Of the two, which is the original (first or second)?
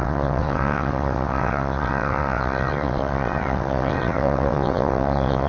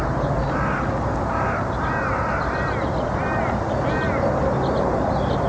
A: second